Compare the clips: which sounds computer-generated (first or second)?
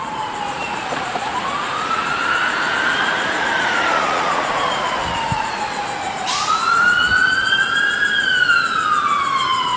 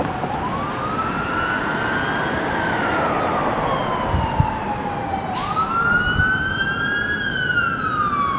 first